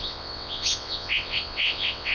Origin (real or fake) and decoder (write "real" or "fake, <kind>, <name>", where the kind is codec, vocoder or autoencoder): fake, vocoder, WaveNeXt